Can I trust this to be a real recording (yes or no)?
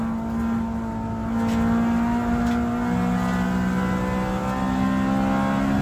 yes